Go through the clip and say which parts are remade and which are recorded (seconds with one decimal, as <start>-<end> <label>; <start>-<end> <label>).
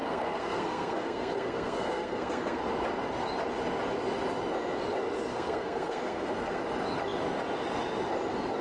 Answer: 0.0-2.6 remade; 2.6-5.3 recorded; 5.3-6.6 remade; 6.6-8.6 recorded